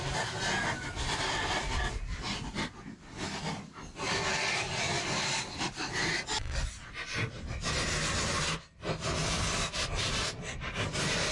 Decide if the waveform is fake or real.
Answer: real